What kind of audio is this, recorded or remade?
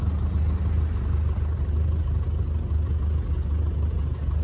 recorded